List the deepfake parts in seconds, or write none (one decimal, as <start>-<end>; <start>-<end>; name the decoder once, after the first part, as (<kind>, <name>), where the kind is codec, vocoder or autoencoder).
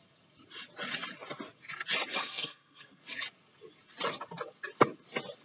2.2-3.0 (codec, SNAC)